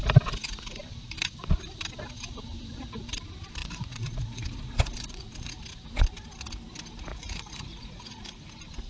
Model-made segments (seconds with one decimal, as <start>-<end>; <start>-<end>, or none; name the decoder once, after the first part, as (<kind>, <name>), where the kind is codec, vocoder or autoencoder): 3.6-5.5 (vocoder, Vocos); 7.1-8.5